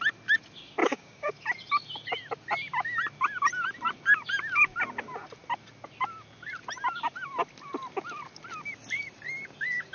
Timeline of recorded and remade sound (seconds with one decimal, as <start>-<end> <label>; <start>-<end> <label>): 0.0-0.8 recorded; 0.8-1.3 remade; 1.3-9.9 recorded